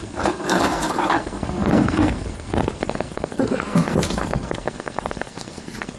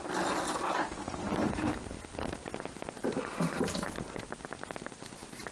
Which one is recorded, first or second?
second